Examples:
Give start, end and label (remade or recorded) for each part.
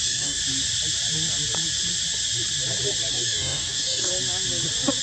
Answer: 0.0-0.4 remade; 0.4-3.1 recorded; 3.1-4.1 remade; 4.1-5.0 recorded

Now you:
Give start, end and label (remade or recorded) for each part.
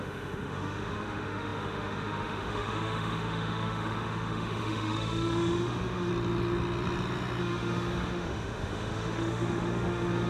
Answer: 0.0-6.1 remade; 6.1-7.4 recorded; 7.4-10.3 remade